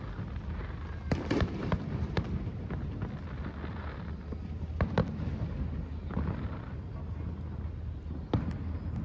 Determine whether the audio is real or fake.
real